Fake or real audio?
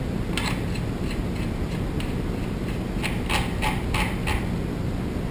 real